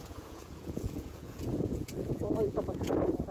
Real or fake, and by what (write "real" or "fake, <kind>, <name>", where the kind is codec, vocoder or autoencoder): fake, vocoder, Vocos